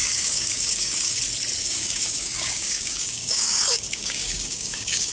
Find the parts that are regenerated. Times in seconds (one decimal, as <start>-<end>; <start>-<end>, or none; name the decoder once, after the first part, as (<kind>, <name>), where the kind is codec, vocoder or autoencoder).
0.0-1.2 (codec, DAC); 1.6-5.1